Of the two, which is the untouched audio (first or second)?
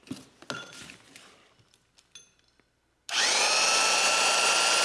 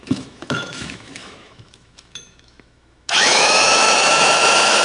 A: first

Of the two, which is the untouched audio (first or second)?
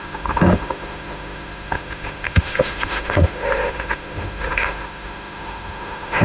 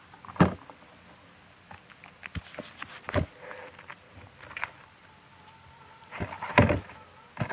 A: second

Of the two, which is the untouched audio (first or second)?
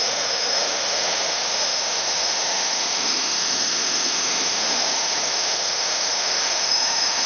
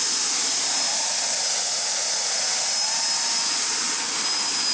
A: second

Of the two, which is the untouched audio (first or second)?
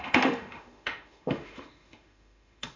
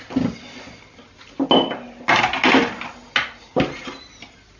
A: second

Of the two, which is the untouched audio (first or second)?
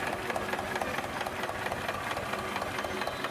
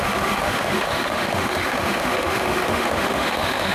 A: first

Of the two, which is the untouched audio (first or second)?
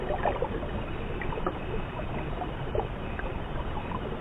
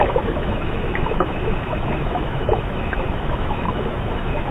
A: first